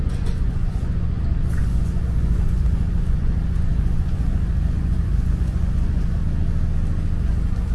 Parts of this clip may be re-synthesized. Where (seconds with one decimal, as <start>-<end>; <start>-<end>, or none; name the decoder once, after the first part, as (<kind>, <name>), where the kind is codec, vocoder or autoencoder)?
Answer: 0.0-6.2 (vocoder, Vocos); 7.2-7.7